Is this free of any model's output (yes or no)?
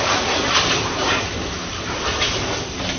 no